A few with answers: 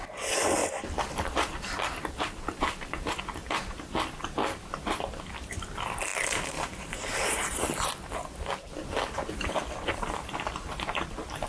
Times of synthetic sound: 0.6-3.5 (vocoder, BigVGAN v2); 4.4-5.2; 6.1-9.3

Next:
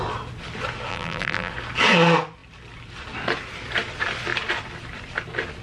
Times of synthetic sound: 0.9-1.5 (vocoder, BigVGAN v2)